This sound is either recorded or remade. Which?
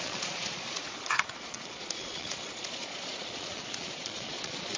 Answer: remade